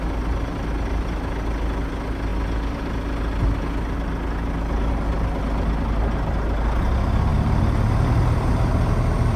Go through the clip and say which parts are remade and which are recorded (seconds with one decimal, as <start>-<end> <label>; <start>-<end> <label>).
0.0-7.3 recorded; 7.3-8.5 remade; 8.5-9.4 recorded